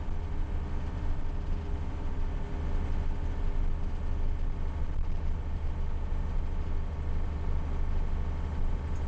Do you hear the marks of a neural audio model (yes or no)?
no